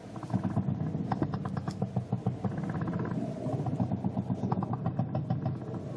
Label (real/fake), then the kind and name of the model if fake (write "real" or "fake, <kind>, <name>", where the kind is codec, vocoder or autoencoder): real